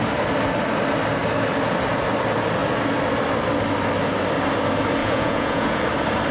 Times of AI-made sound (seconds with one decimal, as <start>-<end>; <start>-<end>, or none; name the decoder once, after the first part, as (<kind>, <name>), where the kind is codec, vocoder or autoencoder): 5.0-5.8 (vocoder, Vocos)

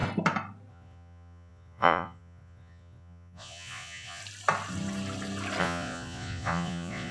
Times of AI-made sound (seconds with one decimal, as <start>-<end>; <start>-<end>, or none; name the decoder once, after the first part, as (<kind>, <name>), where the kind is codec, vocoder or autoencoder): 0.7-4.2 (vocoder, Vocos); 5.6-7.1

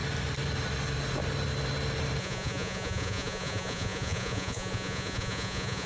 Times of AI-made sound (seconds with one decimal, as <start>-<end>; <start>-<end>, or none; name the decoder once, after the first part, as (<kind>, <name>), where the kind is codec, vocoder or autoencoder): 2.2-5.9 (vocoder, Vocos)

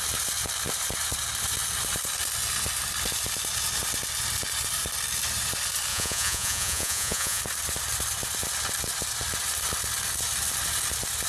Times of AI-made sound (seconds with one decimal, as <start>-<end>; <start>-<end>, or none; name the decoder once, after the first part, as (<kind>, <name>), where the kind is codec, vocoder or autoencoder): 5.9-7.4 (vocoder, Vocos)

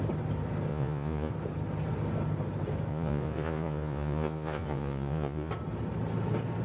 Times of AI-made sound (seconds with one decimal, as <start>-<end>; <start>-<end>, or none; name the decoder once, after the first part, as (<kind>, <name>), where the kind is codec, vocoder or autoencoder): 0.7-1.3 (vocoder, Vocos); 2.9-5.5

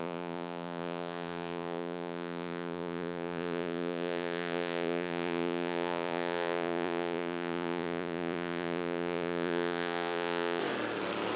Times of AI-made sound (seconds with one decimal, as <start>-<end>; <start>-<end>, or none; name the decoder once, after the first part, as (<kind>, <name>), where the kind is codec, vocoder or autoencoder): 0.0-10.6 (vocoder, Vocos)

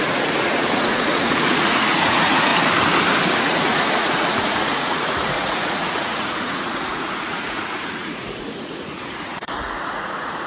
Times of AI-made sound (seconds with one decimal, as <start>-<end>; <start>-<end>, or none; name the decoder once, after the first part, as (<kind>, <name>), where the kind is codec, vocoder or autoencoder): 0.0-2.5 (vocoder, Vocos); 3.4-10.5

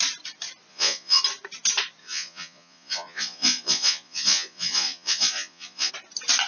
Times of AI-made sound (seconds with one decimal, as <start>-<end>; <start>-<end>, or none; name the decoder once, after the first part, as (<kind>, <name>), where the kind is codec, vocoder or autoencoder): 0.7-1.2 (vocoder, Vocos); 2.0-5.9